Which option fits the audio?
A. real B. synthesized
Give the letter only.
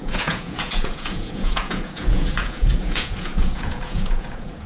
B